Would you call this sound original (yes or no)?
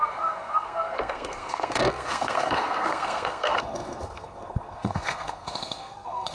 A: no